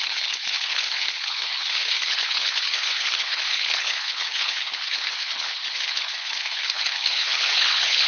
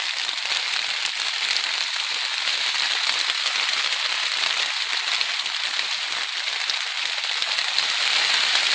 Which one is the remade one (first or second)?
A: first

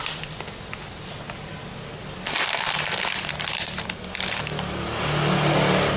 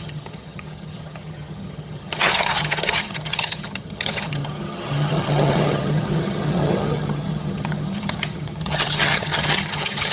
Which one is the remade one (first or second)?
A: second